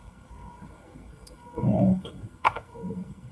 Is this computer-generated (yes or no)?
yes